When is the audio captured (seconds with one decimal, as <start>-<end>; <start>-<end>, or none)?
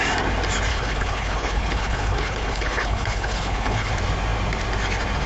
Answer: 0.0-0.7; 3.9-5.3